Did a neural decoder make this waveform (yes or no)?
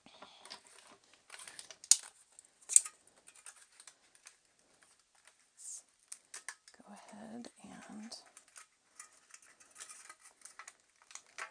no